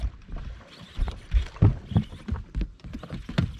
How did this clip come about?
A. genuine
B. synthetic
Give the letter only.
A